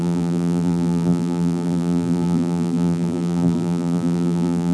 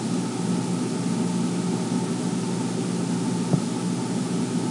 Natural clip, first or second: second